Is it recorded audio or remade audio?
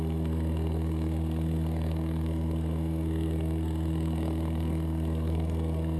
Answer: remade